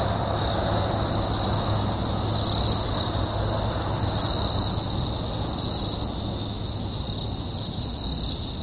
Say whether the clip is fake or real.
real